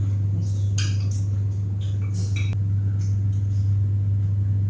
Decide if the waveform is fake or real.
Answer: real